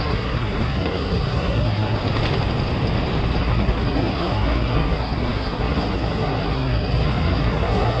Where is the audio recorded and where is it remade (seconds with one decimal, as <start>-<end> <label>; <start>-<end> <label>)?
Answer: 0.0-2.0 remade; 2.0-3.4 recorded; 3.4-8.0 remade